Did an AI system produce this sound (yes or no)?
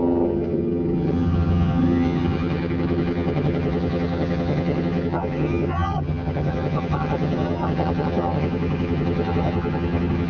yes